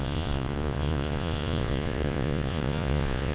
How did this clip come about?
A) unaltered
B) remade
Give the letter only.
B